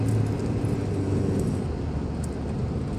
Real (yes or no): yes